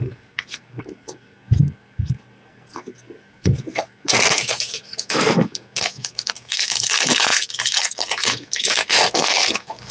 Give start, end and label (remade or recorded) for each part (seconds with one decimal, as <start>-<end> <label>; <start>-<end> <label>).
0.0-9.9 remade